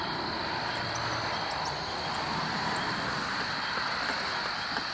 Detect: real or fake real